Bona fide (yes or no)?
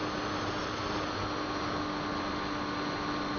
yes